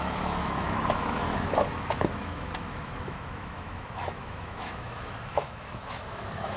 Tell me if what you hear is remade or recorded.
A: remade